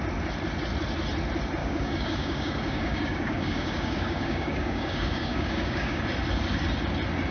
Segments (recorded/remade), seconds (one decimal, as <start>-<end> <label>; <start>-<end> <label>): 0.0-1.6 recorded; 1.6-6.0 remade; 6.0-7.3 recorded